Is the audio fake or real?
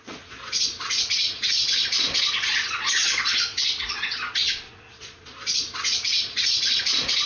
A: fake